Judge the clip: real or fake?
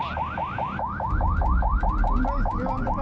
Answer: real